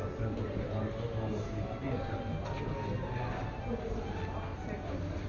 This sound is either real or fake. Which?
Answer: real